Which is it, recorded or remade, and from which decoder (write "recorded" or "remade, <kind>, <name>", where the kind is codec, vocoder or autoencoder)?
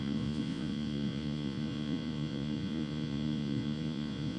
remade, vocoder, Vocos